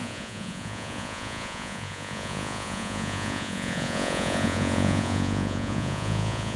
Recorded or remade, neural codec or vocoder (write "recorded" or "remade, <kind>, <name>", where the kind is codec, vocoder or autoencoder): remade, vocoder, Vocos